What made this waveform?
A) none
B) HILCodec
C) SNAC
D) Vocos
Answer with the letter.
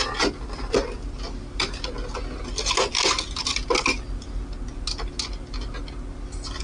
A